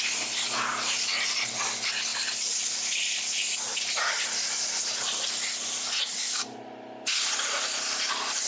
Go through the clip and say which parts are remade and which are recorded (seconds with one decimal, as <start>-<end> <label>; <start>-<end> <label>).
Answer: 0.0-2.1 recorded; 2.1-6.0 remade; 6.0-8.5 recorded